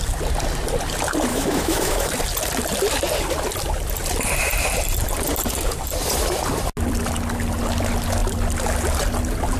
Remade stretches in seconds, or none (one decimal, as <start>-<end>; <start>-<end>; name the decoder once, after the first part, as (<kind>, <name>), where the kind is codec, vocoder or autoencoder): 1.3-2.1 (autoencoder, DAC-VAE)